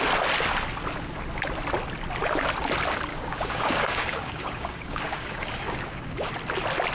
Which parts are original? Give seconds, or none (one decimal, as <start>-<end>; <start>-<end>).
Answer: 0.0-3.1; 6.3-6.9